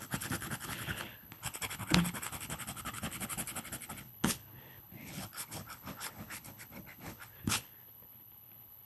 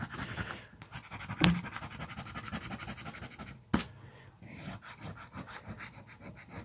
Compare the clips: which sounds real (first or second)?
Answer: second